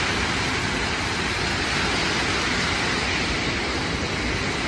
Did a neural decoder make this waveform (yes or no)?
no